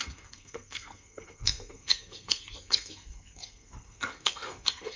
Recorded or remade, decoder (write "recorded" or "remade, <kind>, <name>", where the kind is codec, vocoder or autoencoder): remade, codec, SNAC